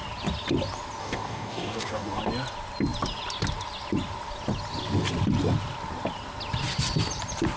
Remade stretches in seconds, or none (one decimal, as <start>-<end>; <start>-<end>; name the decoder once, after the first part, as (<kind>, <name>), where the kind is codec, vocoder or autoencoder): 1.0-2.2 (codec, DAC)

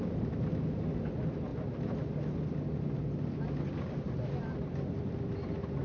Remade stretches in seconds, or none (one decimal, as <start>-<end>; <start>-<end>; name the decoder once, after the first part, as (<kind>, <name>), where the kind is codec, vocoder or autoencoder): none

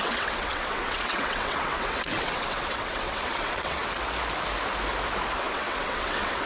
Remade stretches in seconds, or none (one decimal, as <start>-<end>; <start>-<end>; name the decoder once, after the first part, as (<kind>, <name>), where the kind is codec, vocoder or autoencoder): 0.0-3.8 (vocoder, WaveNeXt); 5.5-6.5

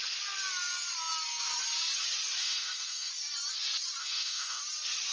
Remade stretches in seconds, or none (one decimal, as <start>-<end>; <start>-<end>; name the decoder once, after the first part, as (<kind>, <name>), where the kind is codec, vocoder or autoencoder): 2.4-3.1 (autoencoder, DAC-VAE); 4.0-4.6

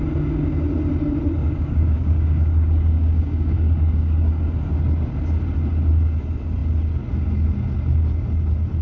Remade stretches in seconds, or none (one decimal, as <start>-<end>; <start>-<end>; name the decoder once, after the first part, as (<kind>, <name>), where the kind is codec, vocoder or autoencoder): 1.4-4.5 (codec, DAC)

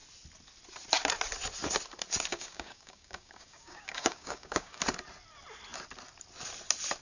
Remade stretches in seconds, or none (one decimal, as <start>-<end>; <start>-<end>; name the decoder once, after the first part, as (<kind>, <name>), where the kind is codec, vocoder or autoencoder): 2.3-4.8 (codec, DAC)

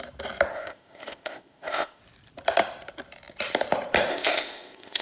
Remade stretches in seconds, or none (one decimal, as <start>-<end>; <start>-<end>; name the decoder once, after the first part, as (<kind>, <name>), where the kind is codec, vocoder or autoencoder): 0.5-2.0 (codec, ZipCodec); 4.1-5.0

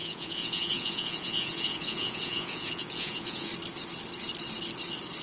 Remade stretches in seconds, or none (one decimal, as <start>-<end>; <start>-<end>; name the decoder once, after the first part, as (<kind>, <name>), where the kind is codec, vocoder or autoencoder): 0.0-3.5 (vocoder, Vocos)